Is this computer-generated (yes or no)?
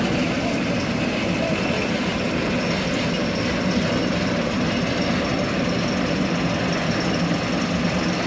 no